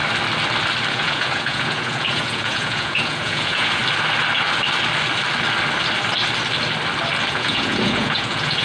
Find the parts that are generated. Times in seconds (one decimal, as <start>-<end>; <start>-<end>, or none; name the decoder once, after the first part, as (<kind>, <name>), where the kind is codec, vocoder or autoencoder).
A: 0.9-3.8 (vocoder, Vocos); 7.3-8.6